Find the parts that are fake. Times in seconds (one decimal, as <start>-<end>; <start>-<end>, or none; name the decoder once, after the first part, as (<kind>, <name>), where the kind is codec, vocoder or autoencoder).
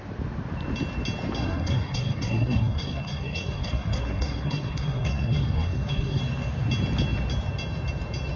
1.4-6.2 (codec, SNAC)